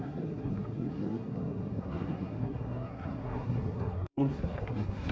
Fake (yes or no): yes